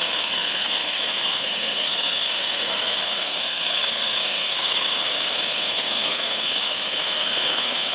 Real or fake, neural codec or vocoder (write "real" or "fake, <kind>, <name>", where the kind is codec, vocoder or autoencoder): fake, codec, SNAC